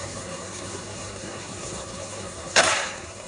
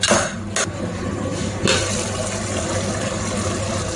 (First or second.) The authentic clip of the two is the second